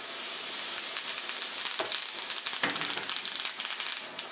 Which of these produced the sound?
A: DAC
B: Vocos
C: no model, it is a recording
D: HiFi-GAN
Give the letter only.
C